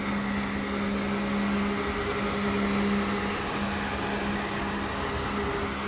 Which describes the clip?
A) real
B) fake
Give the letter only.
A